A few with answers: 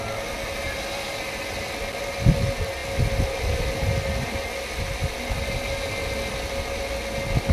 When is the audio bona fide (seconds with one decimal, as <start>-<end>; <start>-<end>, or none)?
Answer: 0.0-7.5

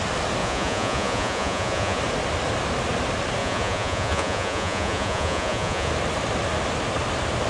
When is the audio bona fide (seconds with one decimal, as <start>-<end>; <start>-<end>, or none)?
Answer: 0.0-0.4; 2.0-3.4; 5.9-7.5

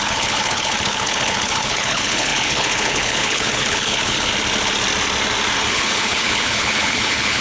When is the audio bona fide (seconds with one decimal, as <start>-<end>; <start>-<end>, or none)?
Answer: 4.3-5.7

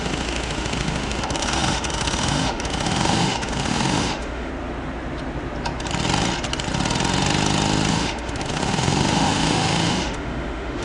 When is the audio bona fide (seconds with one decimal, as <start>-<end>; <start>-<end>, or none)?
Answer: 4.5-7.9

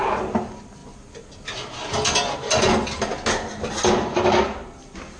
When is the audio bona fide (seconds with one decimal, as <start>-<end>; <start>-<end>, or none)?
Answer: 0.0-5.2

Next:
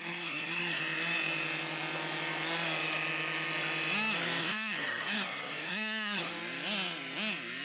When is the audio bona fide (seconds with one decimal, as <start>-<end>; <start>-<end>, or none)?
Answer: 0.8-4.4; 6.3-7.6

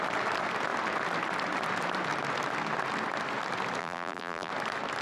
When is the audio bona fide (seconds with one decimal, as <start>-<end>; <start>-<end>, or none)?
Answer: 0.0-3.8; 4.5-5.0